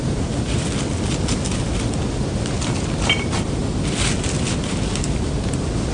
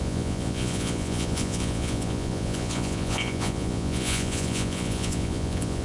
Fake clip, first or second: second